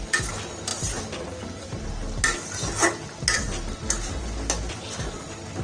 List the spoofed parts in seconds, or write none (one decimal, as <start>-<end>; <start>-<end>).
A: none

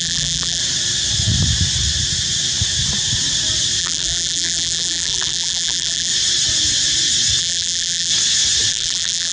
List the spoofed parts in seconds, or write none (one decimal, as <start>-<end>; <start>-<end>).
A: 0.0-0.6; 3.8-6.1; 7.4-8.1; 8.7-9.3